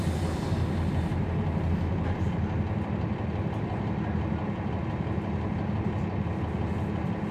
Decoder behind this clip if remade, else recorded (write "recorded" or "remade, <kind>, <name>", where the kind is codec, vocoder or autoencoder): recorded